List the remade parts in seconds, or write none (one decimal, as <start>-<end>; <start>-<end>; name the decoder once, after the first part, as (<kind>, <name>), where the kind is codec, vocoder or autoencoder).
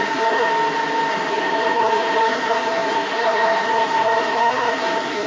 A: 0.0-0.5 (codec, SNAC); 1.1-5.3